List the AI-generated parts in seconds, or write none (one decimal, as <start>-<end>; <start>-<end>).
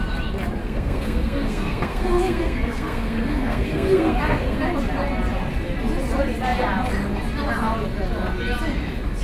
0.6-4.6